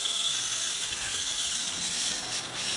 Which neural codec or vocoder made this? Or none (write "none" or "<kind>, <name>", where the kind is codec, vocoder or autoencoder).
codec, SNAC